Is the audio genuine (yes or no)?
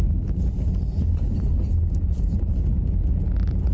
yes